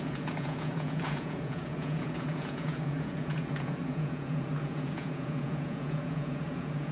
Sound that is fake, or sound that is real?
fake